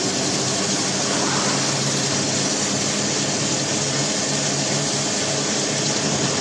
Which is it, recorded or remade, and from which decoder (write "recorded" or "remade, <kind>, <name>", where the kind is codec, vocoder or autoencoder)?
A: recorded